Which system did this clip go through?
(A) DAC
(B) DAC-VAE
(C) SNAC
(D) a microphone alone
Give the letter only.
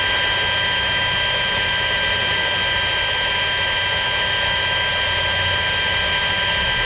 D